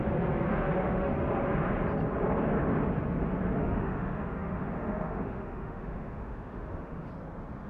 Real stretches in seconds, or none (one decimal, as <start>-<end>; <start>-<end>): 0.0-0.5; 1.1-3.6; 7.1-7.7